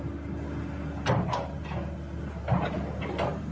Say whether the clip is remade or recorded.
recorded